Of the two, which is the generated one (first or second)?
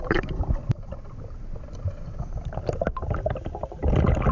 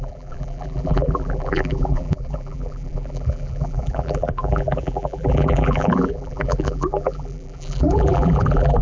second